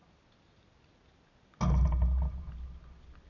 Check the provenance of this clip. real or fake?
real